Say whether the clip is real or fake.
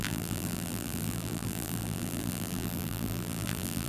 fake